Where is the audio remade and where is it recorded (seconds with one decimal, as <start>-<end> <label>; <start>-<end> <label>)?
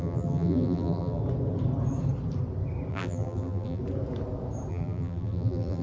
0.0-1.2 remade; 1.2-2.9 recorded; 2.9-3.8 remade; 3.8-4.7 recorded; 4.7-5.8 remade